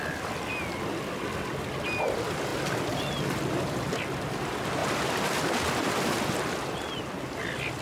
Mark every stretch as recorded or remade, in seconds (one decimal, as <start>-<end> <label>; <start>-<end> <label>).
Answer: 0.0-7.8 recorded